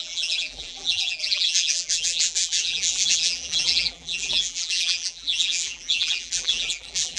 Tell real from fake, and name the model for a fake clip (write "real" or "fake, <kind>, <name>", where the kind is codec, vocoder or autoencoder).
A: fake, vocoder, BigVGAN v2